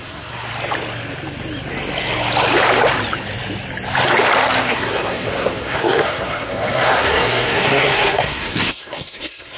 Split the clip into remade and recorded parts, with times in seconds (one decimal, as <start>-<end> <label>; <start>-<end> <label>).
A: 0.0-0.5 remade; 0.5-4.6 recorded; 4.6-9.6 remade